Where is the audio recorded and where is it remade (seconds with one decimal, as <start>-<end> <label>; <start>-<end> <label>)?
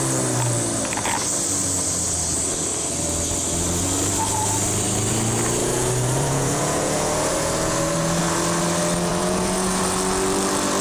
0.0-5.6 recorded; 5.6-8.2 remade; 8.2-9.1 recorded; 9.1-9.8 remade; 9.8-10.8 recorded